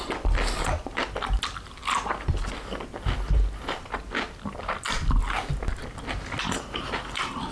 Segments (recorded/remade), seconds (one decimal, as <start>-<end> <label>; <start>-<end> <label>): 0.0-7.5 recorded